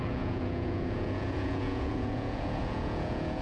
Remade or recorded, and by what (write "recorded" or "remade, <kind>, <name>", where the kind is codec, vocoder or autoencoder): remade, vocoder, Vocos